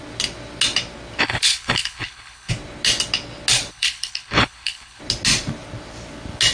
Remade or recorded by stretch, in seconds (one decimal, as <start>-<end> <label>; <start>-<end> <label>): 0.0-1.2 recorded; 1.2-2.5 remade; 2.5-3.7 recorded; 3.7-5.0 remade; 5.0-6.5 recorded